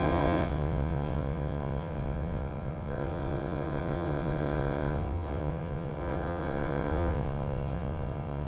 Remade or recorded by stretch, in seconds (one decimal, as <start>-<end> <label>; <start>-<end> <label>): 0.0-8.5 remade